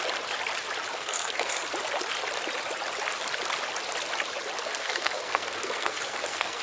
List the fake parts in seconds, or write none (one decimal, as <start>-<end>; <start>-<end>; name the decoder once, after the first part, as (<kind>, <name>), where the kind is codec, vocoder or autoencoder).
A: 0.9-1.6 (codec, SNAC); 4.6-6.6